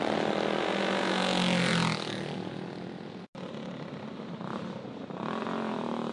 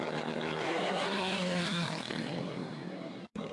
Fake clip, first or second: second